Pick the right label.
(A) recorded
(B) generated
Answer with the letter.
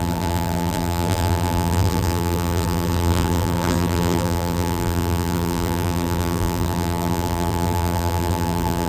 B